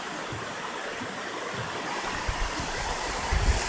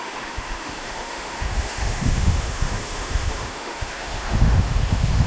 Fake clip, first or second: second